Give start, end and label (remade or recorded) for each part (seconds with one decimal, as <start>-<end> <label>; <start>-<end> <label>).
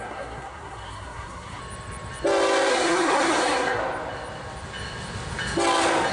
0.0-1.6 remade; 1.6-2.7 recorded; 2.7-3.8 remade; 3.8-6.1 recorded